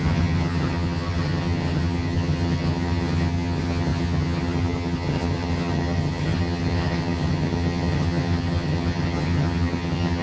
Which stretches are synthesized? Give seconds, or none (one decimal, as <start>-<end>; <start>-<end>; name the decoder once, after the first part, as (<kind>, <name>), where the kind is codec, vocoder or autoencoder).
0.0-10.2 (vocoder, HiFi-GAN)